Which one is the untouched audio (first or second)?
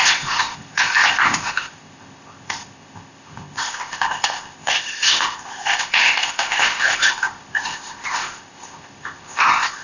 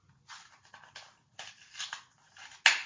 second